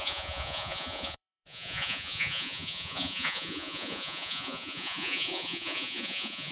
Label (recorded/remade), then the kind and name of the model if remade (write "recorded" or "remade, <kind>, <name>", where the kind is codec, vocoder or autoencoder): remade, vocoder, Vocos